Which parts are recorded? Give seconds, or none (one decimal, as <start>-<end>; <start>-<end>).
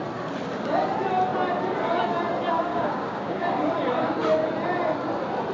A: 0.0-2.7; 3.4-5.5